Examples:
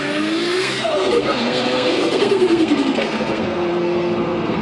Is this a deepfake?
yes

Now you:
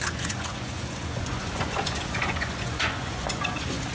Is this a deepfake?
yes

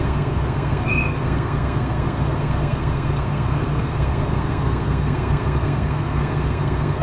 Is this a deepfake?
yes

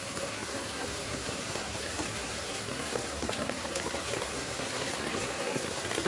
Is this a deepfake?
yes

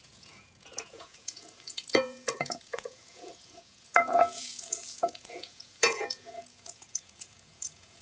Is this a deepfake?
yes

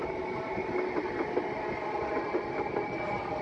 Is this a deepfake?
no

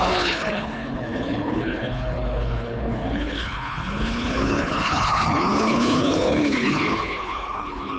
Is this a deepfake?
yes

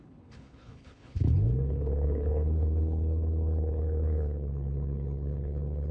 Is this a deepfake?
yes